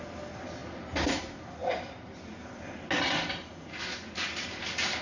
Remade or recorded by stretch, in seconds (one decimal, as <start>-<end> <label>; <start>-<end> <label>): 0.0-5.0 recorded